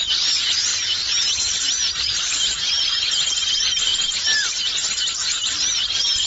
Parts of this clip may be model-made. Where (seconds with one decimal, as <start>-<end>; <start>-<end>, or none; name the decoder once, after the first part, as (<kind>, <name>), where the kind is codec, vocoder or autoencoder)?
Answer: 0.7-3.5 (vocoder, BigVGAN v2); 5.4-6.3